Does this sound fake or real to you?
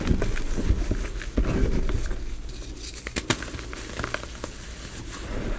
real